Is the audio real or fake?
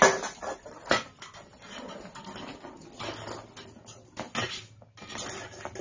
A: real